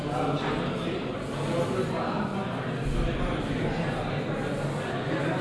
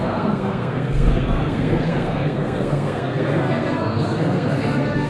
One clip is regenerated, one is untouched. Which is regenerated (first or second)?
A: second